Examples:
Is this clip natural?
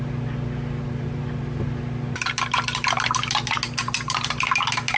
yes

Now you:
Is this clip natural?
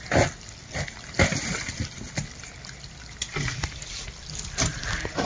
yes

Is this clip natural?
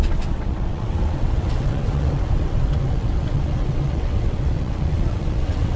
no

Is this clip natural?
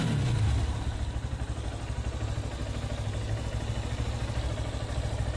yes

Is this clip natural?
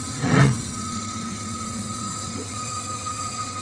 no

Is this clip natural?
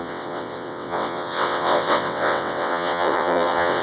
no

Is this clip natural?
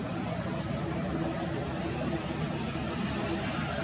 yes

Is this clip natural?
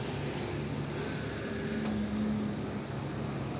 yes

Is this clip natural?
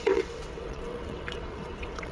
no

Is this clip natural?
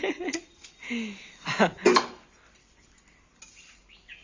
yes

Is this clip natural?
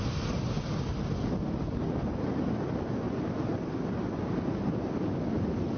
yes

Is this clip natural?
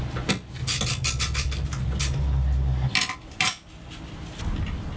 yes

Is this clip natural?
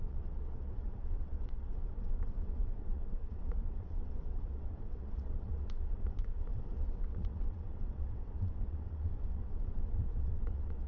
no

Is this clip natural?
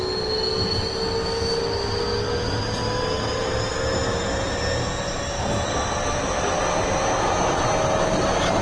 yes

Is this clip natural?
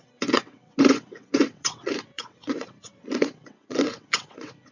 no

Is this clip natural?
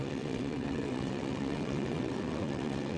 no